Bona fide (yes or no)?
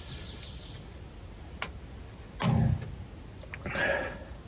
yes